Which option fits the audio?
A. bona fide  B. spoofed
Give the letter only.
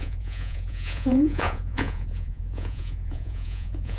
B